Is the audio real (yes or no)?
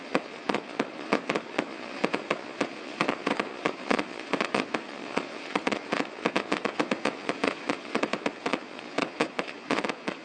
no